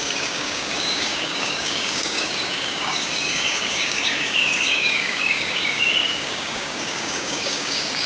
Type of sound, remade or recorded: remade